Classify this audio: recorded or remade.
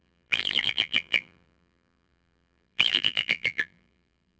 remade